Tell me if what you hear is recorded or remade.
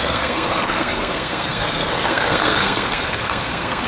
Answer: remade